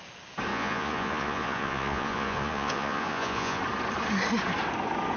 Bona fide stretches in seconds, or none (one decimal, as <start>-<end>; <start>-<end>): 0.0-0.5; 3.6-5.2